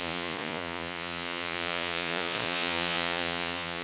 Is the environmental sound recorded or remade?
remade